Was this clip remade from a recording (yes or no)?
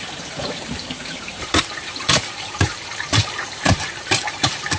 yes